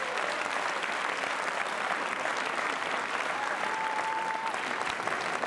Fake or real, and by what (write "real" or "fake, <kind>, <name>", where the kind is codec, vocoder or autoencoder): real